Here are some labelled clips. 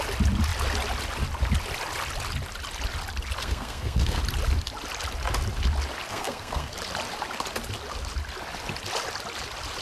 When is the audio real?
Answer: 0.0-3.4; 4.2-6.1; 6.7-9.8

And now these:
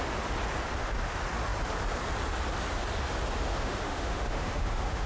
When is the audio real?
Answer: 0.0-3.5

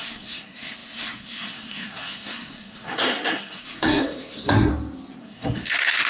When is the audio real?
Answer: 4.7-5.2

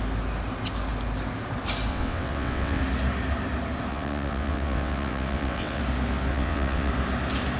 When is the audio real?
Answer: 0.0-1.9; 2.8-3.9; 5.8-6.3; 6.9-7.6

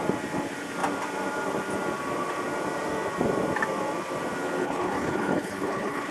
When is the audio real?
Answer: 0.0-4.6